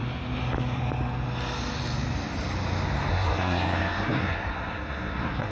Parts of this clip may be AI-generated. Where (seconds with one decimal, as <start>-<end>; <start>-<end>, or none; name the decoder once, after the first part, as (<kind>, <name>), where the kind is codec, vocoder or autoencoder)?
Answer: 3.1-5.5 (codec, SNAC)